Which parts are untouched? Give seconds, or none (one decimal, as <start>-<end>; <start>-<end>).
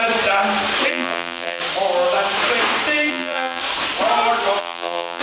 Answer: 0.0-0.9; 1.6-3.1; 3.6-4.6